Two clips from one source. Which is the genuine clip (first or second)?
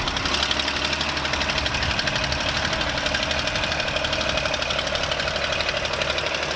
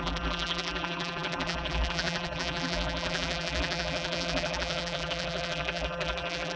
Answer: first